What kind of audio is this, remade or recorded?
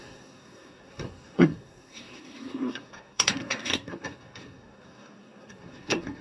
remade